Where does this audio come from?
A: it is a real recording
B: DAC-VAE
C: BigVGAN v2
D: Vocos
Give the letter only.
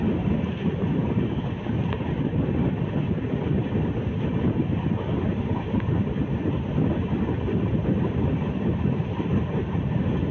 A